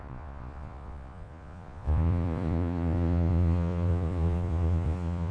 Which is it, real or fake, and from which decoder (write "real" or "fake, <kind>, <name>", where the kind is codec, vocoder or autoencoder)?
fake, vocoder, Vocos